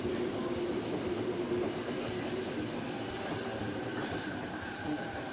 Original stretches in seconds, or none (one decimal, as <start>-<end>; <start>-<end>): 0.4-3.6